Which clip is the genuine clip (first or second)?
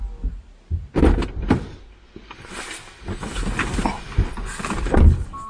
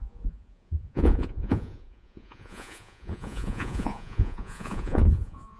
first